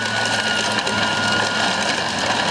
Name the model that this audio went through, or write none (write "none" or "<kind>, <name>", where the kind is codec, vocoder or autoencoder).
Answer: none